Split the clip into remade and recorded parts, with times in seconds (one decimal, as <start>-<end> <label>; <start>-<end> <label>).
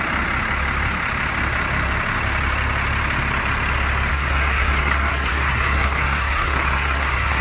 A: 0.0-4.1 recorded; 4.1-7.4 remade